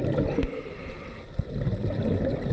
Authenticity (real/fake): real